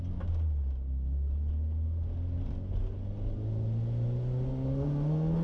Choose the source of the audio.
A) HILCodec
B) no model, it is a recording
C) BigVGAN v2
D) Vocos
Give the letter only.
B